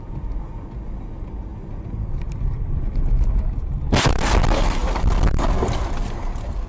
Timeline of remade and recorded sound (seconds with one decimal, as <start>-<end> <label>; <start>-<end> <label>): 0.0-6.7 recorded